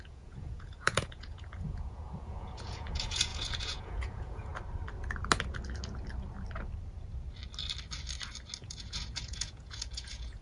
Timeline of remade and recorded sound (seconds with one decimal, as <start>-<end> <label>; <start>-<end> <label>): 0.0-4.5 remade; 4.5-8.6 recorded; 8.6-10.4 remade